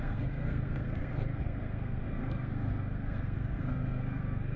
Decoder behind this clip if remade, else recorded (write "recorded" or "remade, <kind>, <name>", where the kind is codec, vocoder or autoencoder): remade, codec, SNAC